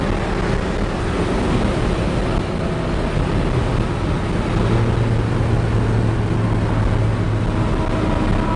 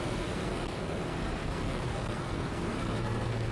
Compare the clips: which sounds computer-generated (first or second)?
second